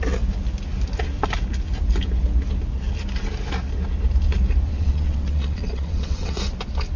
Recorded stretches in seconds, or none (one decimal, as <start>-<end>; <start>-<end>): 0.0-4.7; 6.4-7.0